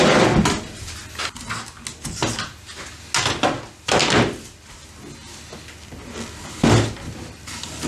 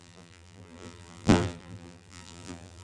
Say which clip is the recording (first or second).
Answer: first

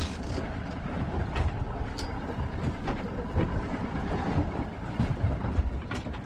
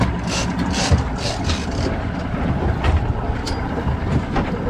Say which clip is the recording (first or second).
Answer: second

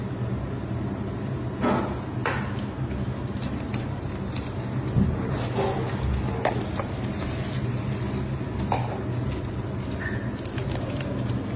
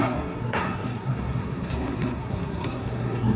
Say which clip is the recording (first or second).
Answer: first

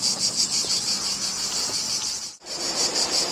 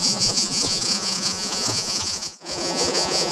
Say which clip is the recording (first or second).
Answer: first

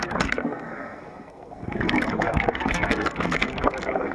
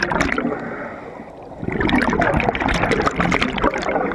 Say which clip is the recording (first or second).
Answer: second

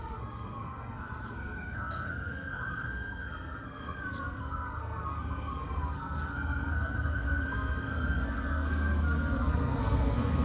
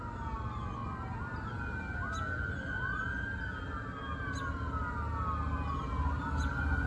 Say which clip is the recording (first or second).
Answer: second